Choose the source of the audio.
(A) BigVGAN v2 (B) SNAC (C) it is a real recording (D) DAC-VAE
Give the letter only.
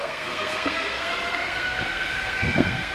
B